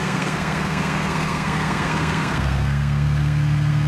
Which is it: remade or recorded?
remade